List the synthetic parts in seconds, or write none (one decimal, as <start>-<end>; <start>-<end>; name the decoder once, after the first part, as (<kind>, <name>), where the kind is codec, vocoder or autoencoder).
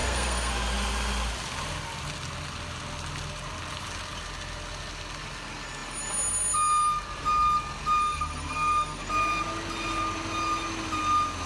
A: 0.0-0.5 (codec, SNAC); 8.0-9.1